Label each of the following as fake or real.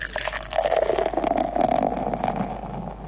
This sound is real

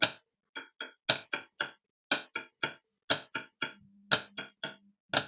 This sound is real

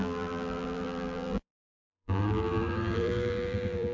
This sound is fake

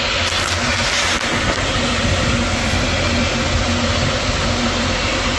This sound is real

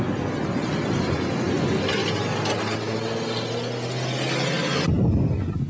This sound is real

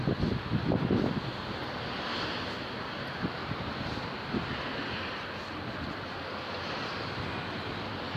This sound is real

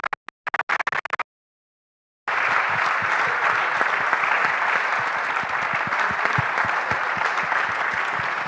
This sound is real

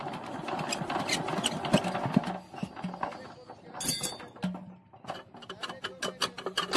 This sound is real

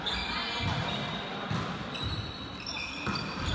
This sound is real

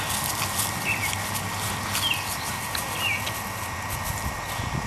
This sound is real